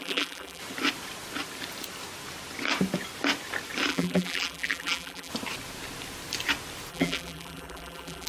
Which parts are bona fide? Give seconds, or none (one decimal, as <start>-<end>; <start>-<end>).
0.6-3.9; 5.3-6.9